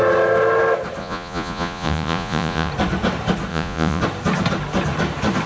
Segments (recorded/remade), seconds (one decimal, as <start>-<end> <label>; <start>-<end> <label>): 0.0-1.0 recorded; 1.0-2.7 remade; 2.7-3.5 recorded; 3.5-4.0 remade; 4.0-5.5 recorded